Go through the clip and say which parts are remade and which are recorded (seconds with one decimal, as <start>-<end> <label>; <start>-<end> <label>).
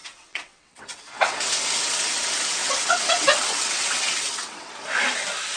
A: 0.0-1.4 remade; 1.4-2.6 recorded; 2.6-4.7 remade; 4.7-5.6 recorded